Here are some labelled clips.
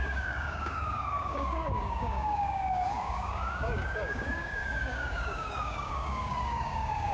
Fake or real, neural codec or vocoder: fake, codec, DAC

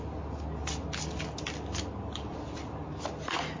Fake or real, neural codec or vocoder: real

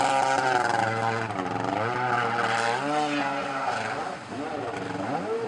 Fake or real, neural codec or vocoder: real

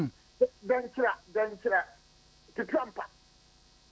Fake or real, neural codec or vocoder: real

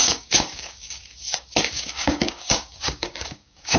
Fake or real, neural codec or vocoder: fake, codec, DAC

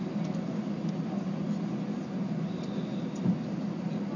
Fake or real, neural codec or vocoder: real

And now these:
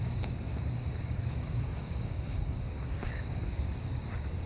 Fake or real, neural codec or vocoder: fake, codec, DAC